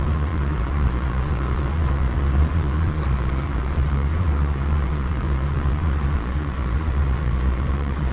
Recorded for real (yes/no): no